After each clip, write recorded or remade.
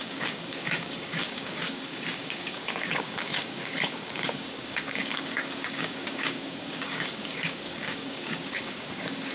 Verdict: remade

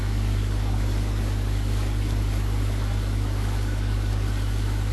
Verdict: remade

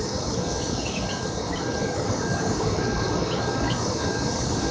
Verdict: remade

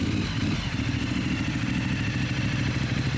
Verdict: recorded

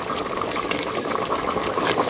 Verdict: remade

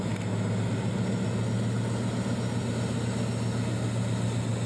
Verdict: recorded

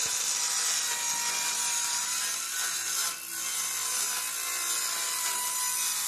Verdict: recorded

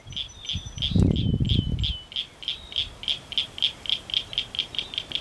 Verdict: recorded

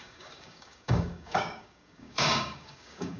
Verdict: remade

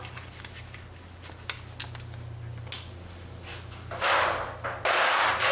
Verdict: recorded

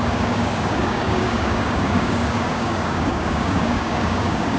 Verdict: remade